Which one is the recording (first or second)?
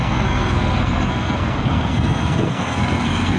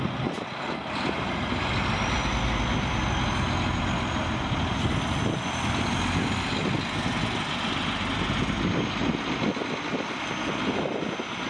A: second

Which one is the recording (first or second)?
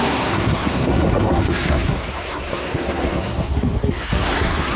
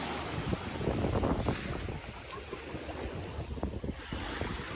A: second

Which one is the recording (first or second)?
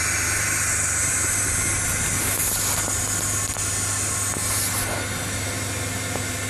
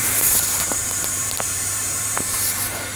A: first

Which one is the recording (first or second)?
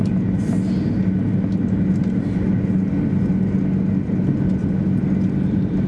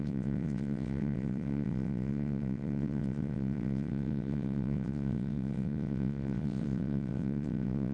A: first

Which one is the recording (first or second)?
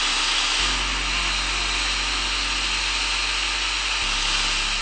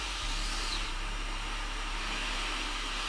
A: first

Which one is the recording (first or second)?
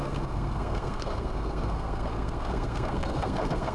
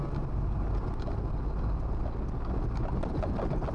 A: second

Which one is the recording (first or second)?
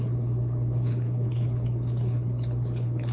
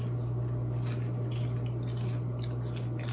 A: second